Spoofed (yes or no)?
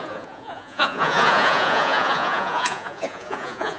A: yes